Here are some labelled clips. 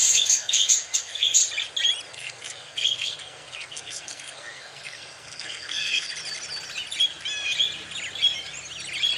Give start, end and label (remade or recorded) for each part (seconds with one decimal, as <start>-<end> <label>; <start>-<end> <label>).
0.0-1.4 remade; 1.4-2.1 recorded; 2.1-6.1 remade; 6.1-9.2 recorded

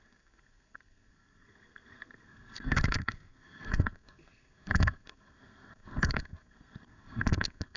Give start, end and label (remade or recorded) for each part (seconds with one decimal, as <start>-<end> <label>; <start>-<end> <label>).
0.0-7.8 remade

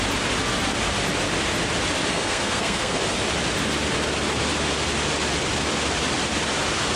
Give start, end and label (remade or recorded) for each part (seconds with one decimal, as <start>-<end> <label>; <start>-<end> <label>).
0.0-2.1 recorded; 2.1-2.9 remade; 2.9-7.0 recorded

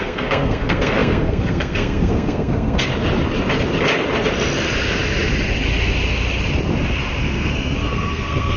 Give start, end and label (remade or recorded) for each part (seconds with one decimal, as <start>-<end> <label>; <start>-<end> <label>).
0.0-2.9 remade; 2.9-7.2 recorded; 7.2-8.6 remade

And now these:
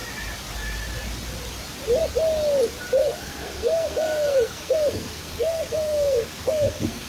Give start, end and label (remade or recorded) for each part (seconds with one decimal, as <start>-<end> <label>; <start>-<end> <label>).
0.0-3.0 recorded; 3.0-7.1 remade

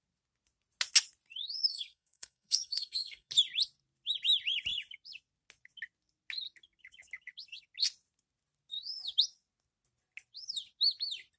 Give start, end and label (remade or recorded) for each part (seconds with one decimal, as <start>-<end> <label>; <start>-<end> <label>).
0.0-1.7 recorded; 1.7-3.3 remade; 3.3-11.4 recorded